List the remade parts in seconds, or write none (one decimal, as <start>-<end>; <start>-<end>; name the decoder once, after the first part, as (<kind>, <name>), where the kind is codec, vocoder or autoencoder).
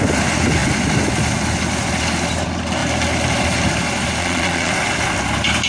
4.2-4.7 (vocoder, Vocos)